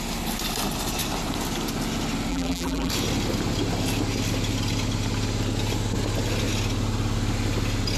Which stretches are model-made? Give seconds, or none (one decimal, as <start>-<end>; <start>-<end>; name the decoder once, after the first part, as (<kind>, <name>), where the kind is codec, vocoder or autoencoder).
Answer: 2.3-2.9 (vocoder, BigVGAN v2)